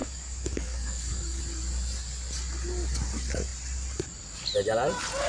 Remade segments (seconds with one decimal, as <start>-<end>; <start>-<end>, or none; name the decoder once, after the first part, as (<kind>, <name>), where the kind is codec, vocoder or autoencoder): 0.0-1.4 (codec, DAC)